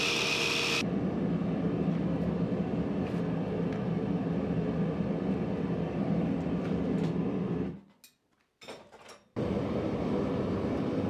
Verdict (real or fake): real